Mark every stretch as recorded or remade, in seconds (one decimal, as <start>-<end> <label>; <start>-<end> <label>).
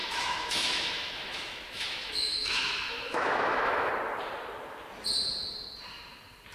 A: 0.0-3.9 remade; 3.9-6.5 recorded